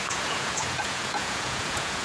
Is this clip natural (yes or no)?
no